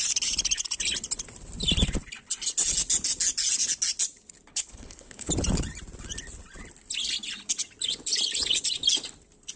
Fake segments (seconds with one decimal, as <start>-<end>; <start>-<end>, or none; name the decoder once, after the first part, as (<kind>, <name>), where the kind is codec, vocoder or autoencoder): 4.5-5.3 (codec, HILCodec)